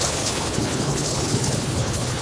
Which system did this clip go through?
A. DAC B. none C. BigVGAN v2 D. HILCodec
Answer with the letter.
D